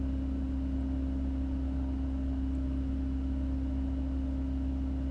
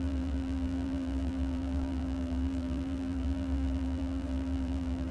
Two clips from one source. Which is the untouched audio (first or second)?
first